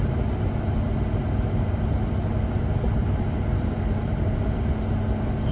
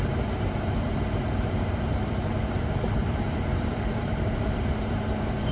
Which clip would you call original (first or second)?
first